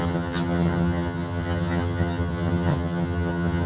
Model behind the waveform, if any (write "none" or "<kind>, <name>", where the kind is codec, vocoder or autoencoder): vocoder, HiFi-GAN